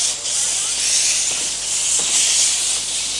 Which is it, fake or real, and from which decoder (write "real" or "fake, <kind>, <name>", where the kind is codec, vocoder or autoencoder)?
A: fake, vocoder, BigVGAN v2